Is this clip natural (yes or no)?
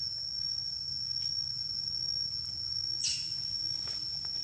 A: yes